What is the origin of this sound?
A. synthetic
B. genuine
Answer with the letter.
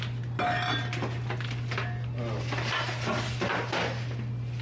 B